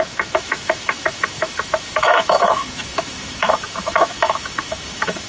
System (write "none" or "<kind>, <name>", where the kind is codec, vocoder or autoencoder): autoencoder, DAC-VAE